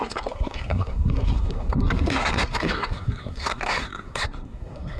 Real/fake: fake